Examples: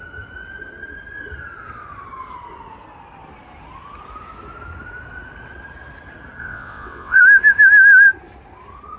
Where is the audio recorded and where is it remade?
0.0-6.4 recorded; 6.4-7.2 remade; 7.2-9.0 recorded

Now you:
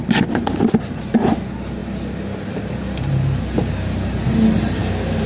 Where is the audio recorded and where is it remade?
0.0-5.3 recorded

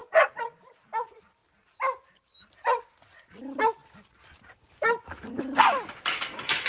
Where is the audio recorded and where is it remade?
0.0-0.6 remade; 0.6-6.7 recorded

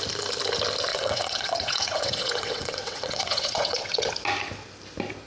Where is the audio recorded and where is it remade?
0.0-0.9 recorded; 0.9-4.1 remade; 4.1-5.3 recorded

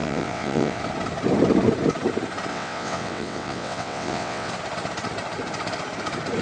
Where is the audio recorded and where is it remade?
0.0-0.8 remade; 0.8-2.5 recorded; 2.5-4.5 remade; 4.5-6.4 recorded

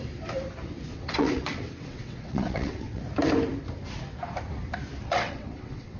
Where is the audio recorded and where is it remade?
0.0-0.9 recorded; 0.9-3.0 remade; 3.0-5.0 recorded; 5.0-6.0 remade